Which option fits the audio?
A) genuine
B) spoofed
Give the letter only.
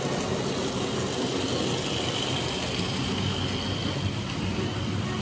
A